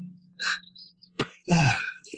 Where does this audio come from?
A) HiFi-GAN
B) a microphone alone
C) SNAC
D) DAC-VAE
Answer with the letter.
C